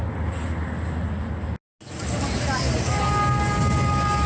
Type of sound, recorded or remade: recorded